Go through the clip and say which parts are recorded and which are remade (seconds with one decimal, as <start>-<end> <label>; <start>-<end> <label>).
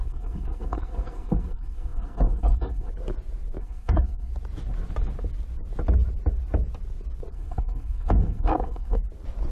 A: 0.0-2.9 remade; 2.9-3.6 recorded; 3.6-4.3 remade; 4.3-7.3 recorded; 7.3-9.0 remade; 9.0-9.5 recorded